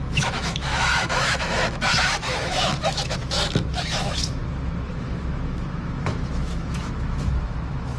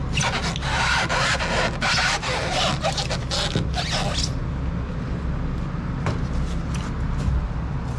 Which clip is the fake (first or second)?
first